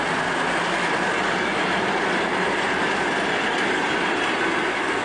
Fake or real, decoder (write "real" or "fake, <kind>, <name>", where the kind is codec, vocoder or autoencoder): real